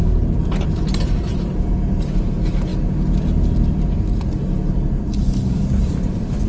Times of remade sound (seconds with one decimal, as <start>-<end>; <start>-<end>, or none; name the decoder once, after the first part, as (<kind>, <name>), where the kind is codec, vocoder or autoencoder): none